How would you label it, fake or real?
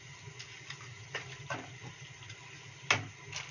real